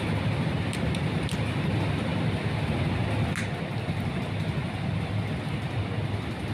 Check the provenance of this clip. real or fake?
real